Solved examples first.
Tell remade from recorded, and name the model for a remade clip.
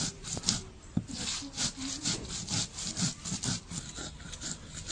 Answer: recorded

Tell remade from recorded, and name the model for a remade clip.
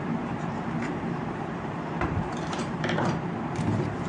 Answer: remade, vocoder, BigVGAN v2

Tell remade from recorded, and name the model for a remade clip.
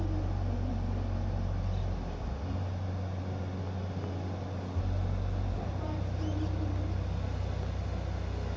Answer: recorded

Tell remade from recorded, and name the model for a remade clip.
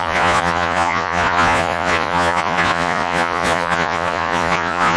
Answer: remade, vocoder, Vocos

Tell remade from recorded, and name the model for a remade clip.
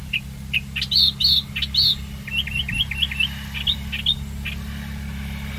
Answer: recorded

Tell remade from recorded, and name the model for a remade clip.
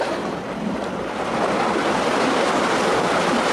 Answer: recorded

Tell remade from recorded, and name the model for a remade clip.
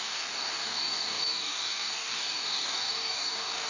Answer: remade, codec, DAC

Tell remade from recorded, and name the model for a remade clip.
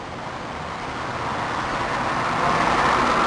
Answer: recorded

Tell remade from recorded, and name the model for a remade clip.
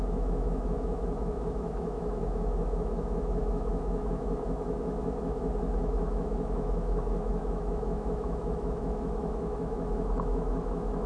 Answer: remade, autoencoder, DAC-VAE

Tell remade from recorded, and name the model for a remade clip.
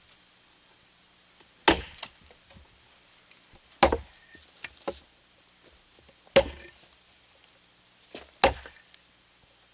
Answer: recorded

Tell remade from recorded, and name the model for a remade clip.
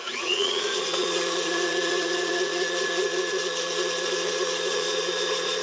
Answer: remade, vocoder, Vocos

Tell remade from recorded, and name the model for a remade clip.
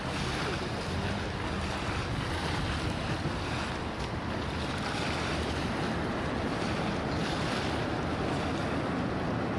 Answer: recorded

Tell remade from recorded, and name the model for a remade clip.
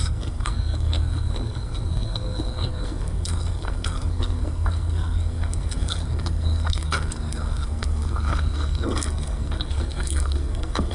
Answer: remade, codec, SNAC